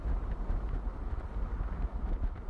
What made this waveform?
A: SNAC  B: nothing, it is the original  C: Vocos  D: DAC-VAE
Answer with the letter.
B